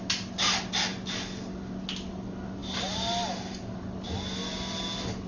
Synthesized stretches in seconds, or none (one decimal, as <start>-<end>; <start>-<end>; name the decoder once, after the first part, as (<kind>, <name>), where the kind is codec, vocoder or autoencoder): none